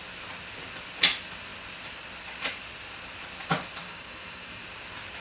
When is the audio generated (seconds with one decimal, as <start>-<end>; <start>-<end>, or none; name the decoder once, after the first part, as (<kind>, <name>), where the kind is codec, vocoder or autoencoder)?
3.8-4.6 (codec, DAC)

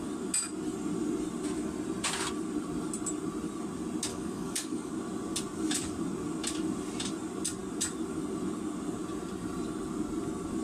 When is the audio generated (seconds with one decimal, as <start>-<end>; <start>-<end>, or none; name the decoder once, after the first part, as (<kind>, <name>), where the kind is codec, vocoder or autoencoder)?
4.1-4.9 (codec, DAC)

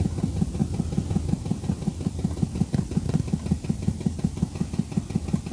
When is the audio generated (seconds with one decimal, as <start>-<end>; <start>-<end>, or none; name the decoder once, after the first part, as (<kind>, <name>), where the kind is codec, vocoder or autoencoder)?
none

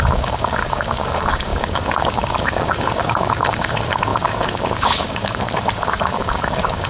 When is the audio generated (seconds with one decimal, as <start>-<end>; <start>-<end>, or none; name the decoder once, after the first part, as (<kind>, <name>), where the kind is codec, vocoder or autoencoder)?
0.0-6.9 (codec, DAC)

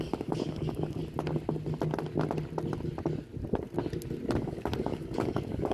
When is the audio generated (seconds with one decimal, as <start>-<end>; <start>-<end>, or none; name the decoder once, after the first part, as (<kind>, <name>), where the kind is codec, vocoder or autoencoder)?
0.0-1.0 (codec, DAC); 4.4-5.7

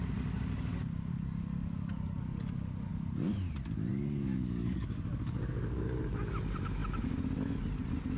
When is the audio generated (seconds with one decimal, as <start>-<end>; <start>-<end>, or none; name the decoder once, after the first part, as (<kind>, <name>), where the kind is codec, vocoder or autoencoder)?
1.1-2.9 (codec, DAC); 3.9-6.0

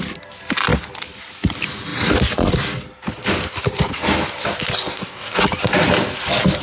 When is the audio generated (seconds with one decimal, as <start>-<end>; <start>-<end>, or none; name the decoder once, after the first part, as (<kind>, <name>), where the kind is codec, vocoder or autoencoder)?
4.9-5.4 (codec, DAC)